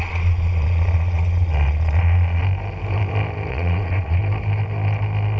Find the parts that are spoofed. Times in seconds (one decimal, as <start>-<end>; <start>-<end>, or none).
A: 0.0-2.4; 3.5-4.2